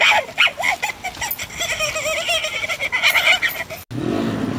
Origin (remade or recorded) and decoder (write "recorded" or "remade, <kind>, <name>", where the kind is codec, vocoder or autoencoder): recorded